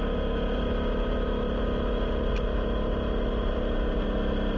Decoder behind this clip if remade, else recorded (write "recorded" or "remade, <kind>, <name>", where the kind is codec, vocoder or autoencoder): recorded